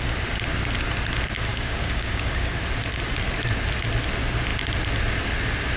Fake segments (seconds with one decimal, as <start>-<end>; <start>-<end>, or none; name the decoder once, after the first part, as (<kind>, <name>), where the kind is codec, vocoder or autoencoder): 1.5-2.6 (codec, DAC)